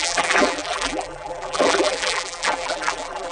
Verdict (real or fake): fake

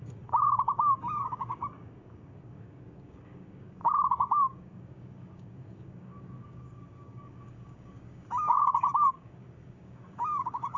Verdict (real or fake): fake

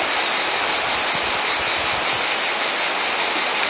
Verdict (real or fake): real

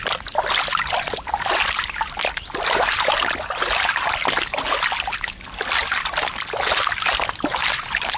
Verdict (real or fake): real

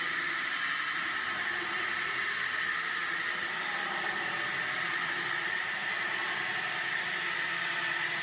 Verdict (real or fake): real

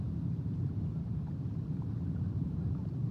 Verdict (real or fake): fake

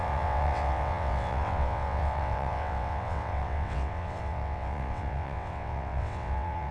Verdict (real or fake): fake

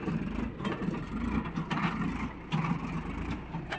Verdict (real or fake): real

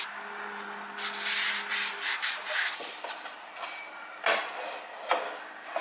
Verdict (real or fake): real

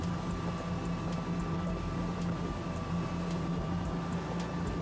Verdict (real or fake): real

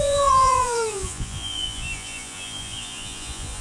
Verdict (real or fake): fake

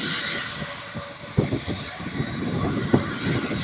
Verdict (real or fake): real